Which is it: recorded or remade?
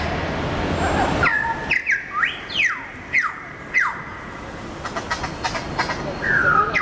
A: recorded